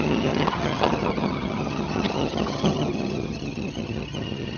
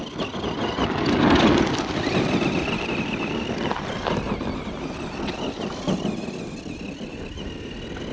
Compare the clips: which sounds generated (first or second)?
first